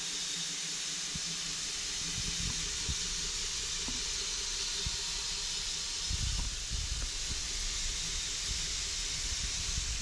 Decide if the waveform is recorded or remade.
recorded